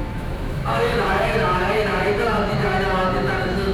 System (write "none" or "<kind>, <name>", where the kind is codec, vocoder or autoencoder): autoencoder, DAC-VAE